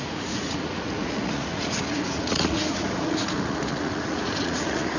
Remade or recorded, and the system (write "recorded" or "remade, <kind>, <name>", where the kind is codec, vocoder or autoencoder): remade, vocoder, Vocos